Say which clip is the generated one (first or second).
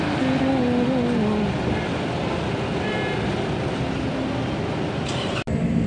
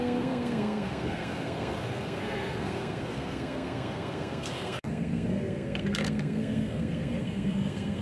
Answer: second